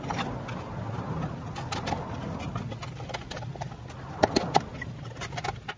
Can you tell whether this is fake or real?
real